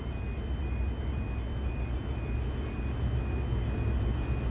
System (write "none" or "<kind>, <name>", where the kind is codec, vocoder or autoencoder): none